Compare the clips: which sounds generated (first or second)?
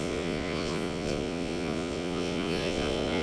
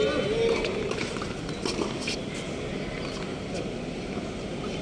first